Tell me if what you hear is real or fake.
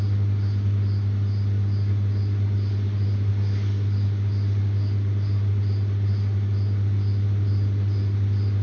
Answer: real